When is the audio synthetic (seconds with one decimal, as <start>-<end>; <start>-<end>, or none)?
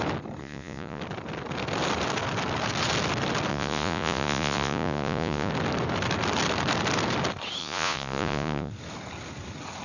0.4-1.0; 3.5-5.5; 7.6-8.7